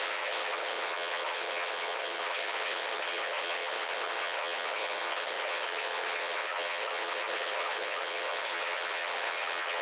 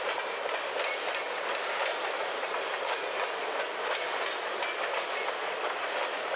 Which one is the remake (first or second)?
first